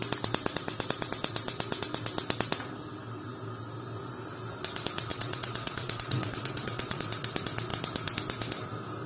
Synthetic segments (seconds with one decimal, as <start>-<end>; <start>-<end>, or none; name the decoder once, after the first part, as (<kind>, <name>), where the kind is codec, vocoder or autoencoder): 5.1-7.0 (vocoder, WaveNeXt)